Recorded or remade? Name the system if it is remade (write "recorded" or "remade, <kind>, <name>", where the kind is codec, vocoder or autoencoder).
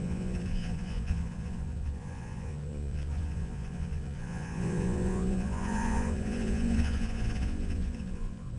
remade, vocoder, Vocos